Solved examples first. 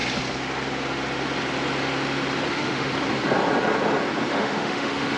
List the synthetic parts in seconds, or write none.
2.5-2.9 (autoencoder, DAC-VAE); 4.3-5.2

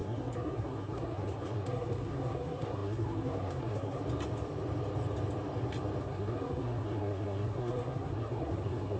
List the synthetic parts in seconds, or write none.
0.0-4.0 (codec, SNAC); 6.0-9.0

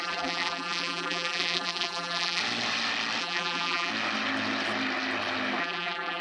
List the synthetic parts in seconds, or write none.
0.0-2.4 (vocoder, BigVGAN v2); 3.2-3.9; 5.6-6.2

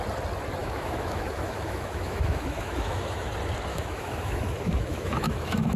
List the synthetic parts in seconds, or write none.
0.6-3.3 (autoencoder, DAC-VAE); 3.7-5.8

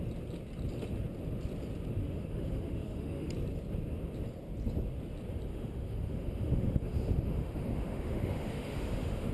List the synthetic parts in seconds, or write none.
2.0-3.3 (autoencoder, DAC-VAE); 5.5-9.3

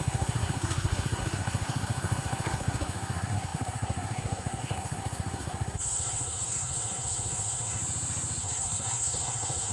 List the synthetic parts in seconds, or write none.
0.0-7.8 (codec, SNAC); 8.4-9.7